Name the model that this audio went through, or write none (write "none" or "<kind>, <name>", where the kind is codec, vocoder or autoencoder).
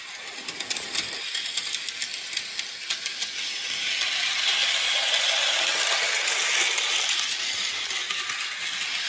none